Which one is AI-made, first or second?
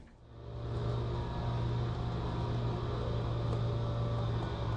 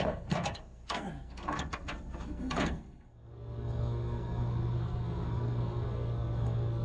second